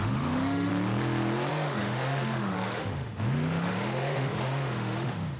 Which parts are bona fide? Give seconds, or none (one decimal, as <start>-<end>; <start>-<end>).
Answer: 0.7-1.5